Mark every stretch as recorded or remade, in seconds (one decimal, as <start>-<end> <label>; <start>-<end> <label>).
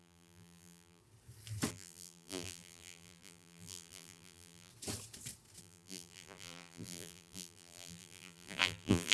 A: 0.0-1.0 remade; 1.0-1.7 recorded; 1.7-4.7 remade; 4.7-5.6 recorded; 5.6-9.1 remade